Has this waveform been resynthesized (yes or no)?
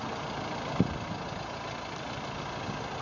no